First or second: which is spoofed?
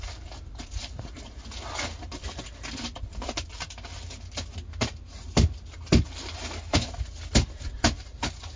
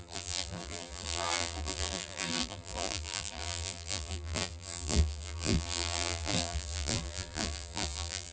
second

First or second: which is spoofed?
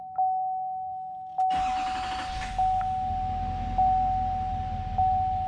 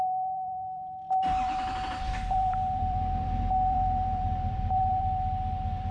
second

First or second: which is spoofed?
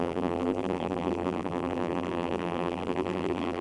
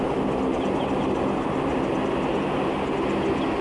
first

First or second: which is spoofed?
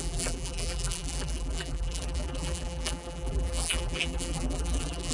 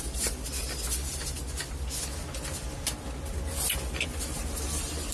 first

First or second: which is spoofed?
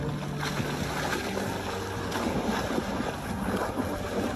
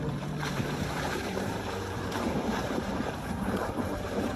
second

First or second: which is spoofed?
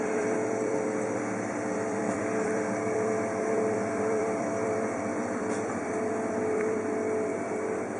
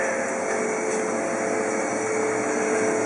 first